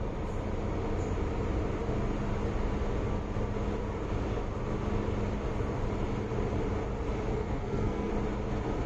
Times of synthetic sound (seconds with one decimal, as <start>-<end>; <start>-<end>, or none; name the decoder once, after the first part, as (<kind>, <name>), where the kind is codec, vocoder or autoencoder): 7.3-8.1 (codec, SNAC)